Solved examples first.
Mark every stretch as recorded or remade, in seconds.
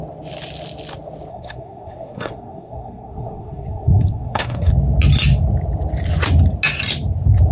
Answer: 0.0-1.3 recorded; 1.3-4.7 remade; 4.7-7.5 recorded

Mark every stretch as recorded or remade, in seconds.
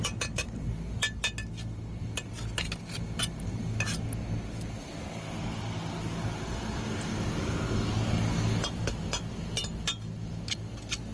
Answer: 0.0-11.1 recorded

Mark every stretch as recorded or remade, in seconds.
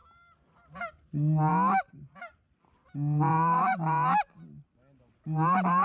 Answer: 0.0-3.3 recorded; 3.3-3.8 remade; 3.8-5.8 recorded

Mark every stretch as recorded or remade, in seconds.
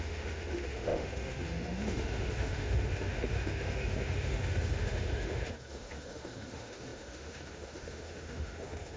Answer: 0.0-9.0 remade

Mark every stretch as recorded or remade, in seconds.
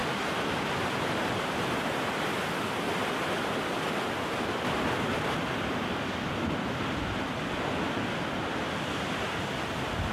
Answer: 0.0-10.1 recorded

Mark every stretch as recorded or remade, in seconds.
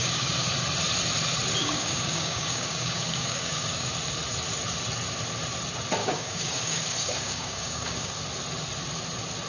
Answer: 0.0-0.5 remade; 0.5-1.6 recorded; 1.6-3.9 remade; 3.9-6.0 recorded; 6.0-8.1 remade; 8.1-9.5 recorded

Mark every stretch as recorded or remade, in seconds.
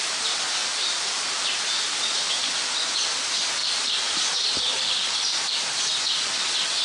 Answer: 0.0-0.6 recorded; 0.6-2.5 remade; 2.5-3.6 recorded; 3.6-5.7 remade; 5.7-6.8 recorded